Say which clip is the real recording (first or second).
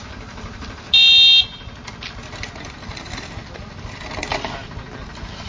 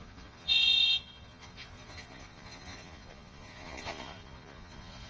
first